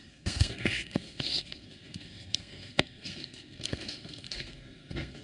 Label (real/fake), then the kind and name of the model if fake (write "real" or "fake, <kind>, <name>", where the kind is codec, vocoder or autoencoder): fake, codec, SNAC